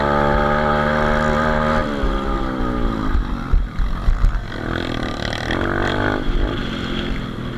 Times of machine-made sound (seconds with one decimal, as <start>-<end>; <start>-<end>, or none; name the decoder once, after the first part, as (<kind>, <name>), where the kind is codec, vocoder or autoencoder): none